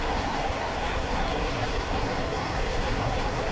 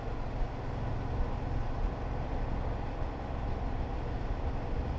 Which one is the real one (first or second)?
second